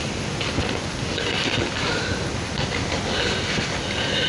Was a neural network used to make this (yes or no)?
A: no